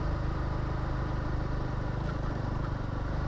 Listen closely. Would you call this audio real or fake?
real